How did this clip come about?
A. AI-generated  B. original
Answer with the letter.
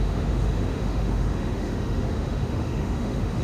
A